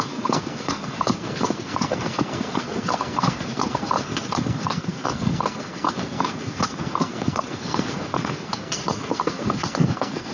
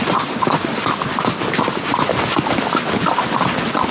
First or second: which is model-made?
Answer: first